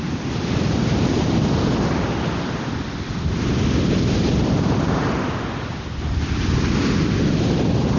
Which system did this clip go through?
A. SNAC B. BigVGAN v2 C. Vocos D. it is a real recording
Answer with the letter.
D